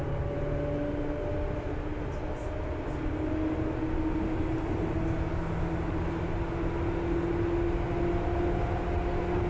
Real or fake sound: real